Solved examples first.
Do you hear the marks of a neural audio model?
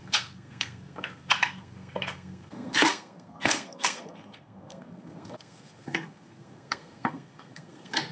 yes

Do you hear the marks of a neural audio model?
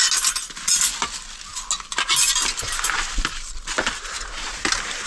no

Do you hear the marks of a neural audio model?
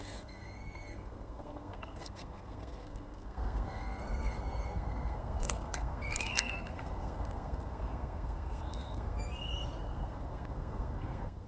yes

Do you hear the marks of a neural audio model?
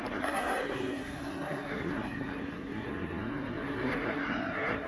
yes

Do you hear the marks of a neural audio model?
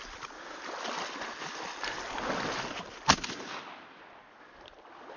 no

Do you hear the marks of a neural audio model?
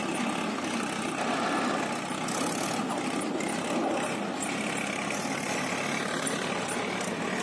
no